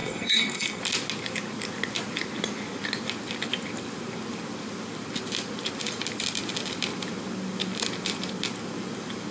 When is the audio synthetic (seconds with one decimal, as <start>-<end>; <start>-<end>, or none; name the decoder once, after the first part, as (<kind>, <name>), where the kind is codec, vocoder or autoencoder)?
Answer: 0.0-0.8 (codec, SNAC)